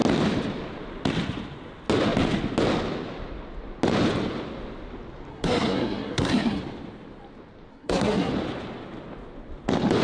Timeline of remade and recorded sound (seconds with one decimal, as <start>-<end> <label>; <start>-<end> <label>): 0.0-5.3 recorded; 5.3-6.6 remade; 6.6-7.7 recorded; 7.7-8.3 remade; 8.3-10.0 recorded